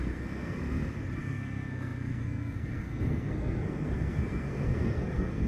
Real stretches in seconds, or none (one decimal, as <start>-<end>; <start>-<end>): 0.6-1.2